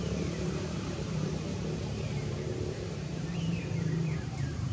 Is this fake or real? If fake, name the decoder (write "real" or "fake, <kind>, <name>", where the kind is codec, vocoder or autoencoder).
fake, vocoder, BigVGAN v2